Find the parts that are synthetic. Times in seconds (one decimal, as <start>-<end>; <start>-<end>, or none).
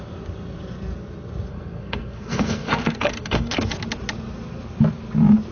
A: 1.5-3.7